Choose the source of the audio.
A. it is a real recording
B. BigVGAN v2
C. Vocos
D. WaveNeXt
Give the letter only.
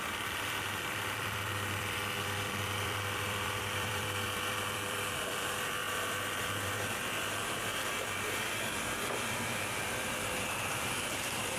B